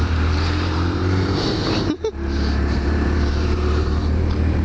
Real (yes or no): no